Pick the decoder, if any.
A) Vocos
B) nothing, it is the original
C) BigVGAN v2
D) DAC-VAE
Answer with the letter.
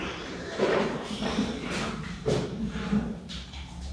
C